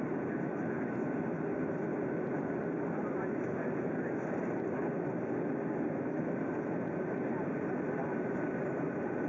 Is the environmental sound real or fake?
real